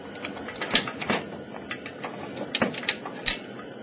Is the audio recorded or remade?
recorded